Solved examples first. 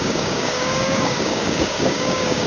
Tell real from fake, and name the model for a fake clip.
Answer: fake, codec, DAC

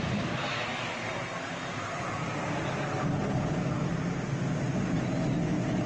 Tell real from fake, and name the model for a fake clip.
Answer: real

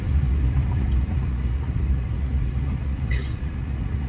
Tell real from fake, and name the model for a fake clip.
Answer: fake, vocoder, Vocos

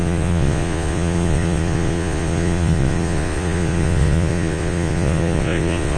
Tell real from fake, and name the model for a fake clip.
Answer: fake, vocoder, Vocos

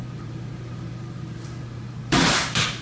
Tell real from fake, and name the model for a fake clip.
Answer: fake, vocoder, BigVGAN v2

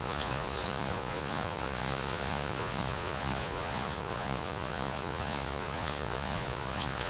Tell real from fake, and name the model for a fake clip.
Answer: fake, vocoder, Vocos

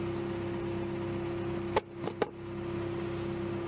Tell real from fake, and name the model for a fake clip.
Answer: real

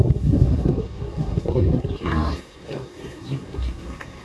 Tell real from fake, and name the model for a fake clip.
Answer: fake, codec, SNAC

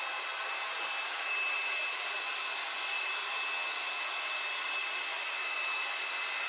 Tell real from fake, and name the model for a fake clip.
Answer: real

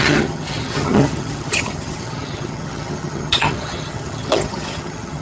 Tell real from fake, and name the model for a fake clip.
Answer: fake, vocoder, HiFi-GAN